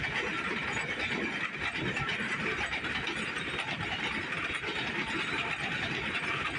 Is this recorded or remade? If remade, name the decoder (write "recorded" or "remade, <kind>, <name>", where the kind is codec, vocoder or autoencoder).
recorded